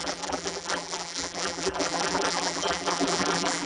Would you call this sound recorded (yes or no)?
no